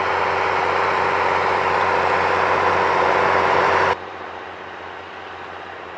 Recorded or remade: recorded